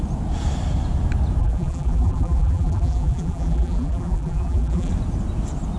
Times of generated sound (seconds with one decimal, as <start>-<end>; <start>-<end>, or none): 1.4-4.9